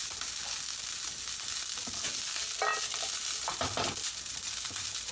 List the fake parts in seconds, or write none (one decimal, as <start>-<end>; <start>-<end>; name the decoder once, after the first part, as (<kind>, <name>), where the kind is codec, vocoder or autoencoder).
2.7-5.1 (vocoder, BigVGAN v2)